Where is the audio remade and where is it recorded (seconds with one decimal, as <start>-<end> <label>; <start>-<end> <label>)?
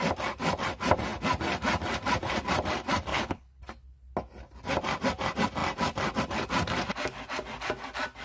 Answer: 0.0-3.1 recorded; 3.1-3.6 remade; 3.6-8.2 recorded